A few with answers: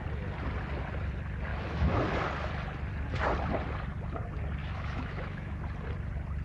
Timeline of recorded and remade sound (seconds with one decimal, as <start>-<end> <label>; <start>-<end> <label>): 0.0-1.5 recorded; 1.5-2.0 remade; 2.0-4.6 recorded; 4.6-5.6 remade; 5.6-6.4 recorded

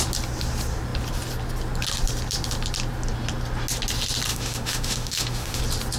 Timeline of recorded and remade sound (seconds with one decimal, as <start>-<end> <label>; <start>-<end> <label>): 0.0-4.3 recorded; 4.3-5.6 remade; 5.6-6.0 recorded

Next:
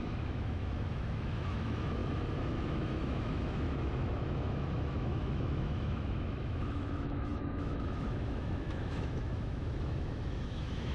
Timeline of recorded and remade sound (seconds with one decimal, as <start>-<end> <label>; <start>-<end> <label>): 0.0-10.9 remade